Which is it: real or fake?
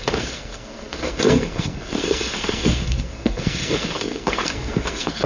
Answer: fake